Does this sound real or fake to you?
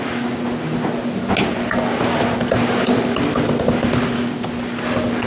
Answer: real